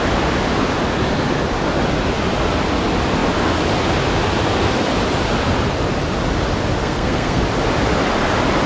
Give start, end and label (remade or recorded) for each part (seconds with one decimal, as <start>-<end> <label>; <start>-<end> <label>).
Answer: 0.0-6.8 recorded; 6.8-7.4 remade; 7.4-8.7 recorded